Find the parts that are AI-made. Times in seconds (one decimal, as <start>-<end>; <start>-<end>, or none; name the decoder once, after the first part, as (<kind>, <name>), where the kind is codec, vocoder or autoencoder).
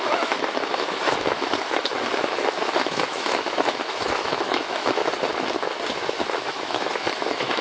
0.0-5.0 (autoencoder, DAC-VAE); 6.2-7.6